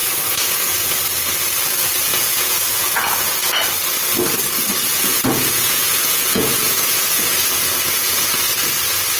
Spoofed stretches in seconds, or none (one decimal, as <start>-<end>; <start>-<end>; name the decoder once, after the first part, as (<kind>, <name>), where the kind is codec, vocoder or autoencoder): 0.0-1.0 (vocoder, Vocos); 2.1-3.5; 4.9-8.4